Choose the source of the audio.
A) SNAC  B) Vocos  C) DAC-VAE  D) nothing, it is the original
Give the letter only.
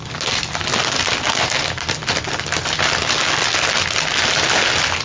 D